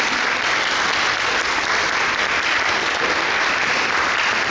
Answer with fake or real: real